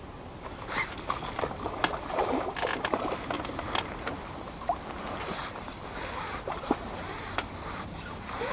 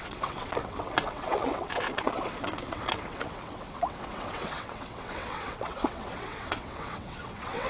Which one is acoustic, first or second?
first